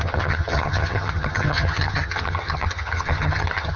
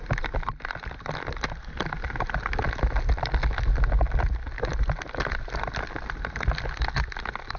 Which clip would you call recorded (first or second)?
second